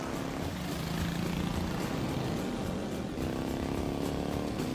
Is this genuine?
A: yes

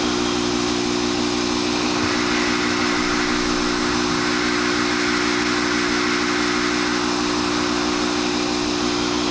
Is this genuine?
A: yes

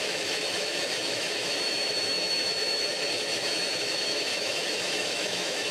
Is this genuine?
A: no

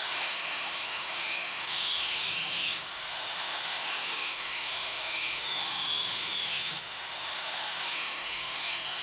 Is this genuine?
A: no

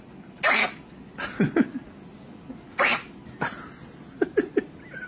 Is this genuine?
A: yes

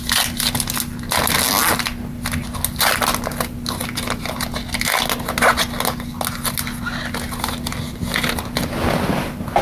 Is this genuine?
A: yes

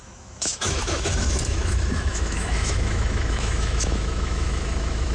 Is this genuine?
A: no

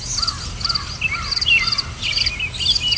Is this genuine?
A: yes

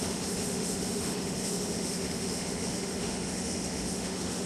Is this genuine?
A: no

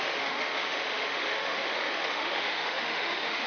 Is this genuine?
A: no